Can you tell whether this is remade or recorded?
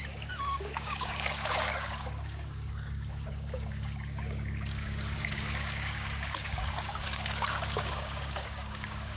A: remade